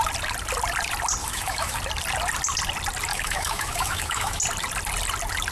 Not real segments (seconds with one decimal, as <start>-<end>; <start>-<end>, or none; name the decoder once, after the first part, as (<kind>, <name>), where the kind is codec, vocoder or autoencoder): 1.2-1.8 (autoencoder, DAC-VAE); 3.1-4.4